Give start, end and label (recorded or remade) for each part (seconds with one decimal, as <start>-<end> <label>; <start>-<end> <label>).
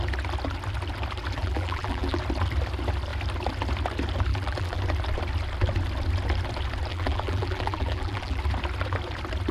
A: 0.0-1.4 recorded; 1.4-2.2 remade; 2.2-4.3 recorded; 4.3-4.8 remade; 4.8-6.9 recorded; 6.9-8.4 remade; 8.4-9.5 recorded